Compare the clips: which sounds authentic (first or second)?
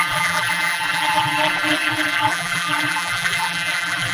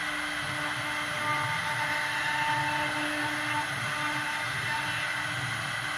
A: second